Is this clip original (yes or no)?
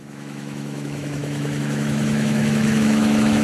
no